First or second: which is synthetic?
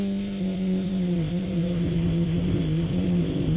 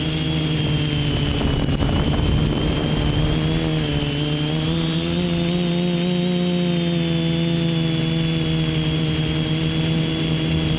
first